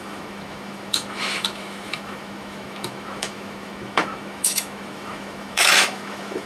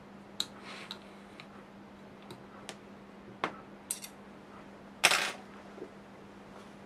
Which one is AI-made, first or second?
first